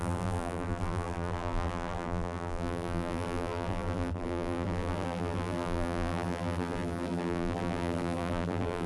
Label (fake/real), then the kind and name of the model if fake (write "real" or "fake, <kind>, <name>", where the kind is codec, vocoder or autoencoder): fake, vocoder, BigVGAN v2